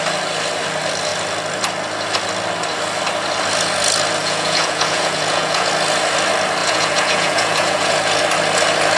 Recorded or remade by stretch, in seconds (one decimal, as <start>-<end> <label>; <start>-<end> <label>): 0.0-4.2 recorded; 4.2-5.7 remade; 5.7-6.6 recorded; 6.6-8.2 remade; 8.2-9.0 recorded